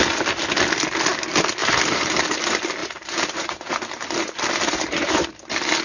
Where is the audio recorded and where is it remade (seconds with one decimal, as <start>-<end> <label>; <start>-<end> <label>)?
0.0-1.6 recorded; 1.6-2.4 remade; 2.4-2.8 recorded; 2.8-5.1 remade; 5.1-5.8 recorded